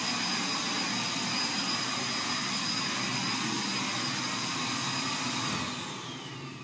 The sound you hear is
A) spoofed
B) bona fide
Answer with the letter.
B